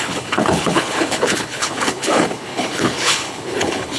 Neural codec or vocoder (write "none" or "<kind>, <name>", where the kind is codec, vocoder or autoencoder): codec, HILCodec